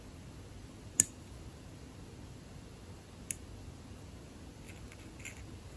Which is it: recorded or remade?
recorded